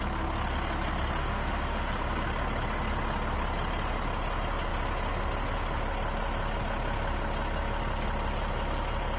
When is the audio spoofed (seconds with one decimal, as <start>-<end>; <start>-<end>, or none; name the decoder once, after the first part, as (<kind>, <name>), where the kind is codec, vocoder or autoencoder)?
1.2-1.9 (autoencoder, DAC-VAE)